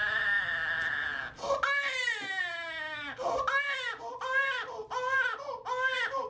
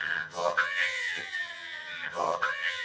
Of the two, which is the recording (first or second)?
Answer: first